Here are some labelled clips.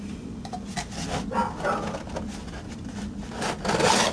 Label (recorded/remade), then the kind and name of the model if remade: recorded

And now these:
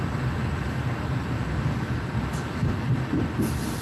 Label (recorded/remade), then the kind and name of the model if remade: recorded